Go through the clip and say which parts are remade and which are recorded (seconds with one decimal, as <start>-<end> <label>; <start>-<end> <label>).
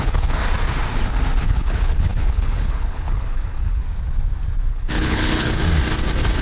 0.0-0.4 remade; 0.4-1.4 recorded; 1.4-3.8 remade; 3.8-4.7 recorded; 4.7-5.6 remade; 5.6-6.4 recorded